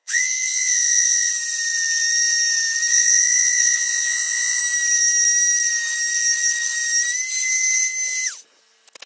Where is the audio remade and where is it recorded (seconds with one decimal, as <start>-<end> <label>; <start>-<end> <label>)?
0.0-1.3 remade; 1.3-2.9 recorded; 2.9-4.6 remade; 4.6-9.1 recorded